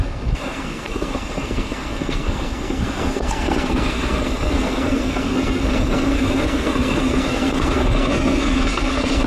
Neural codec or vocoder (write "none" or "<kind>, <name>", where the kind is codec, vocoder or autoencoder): codec, SNAC